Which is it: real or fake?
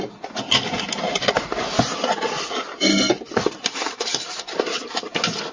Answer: real